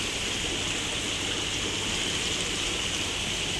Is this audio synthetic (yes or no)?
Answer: no